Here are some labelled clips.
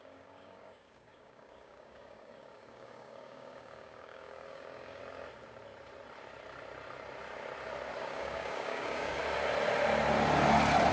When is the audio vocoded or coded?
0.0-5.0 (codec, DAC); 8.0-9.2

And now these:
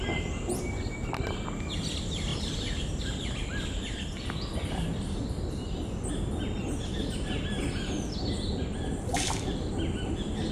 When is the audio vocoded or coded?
none

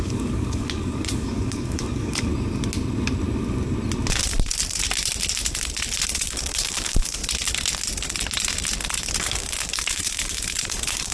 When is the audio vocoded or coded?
0.0-2.3 (codec, DAC); 6.1-7.2; 9.2-11.1

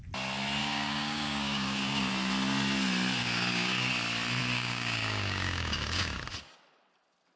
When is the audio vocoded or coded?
0.6-2.1 (codec, DAC); 3.2-3.9; 4.4-6.2

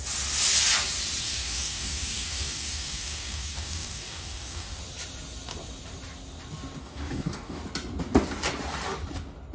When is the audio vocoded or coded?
1.2-4.8 (codec, DAC); 6.8-7.6

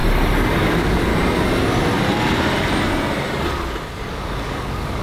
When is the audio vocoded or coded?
0.6-1.1 (codec, DAC); 4.1-5.0

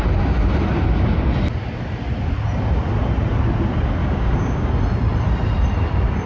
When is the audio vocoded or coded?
4.0-4.7 (codec, DAC)

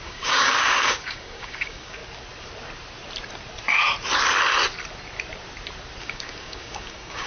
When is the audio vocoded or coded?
0.0-2.0 (codec, DAC); 6.0-7.3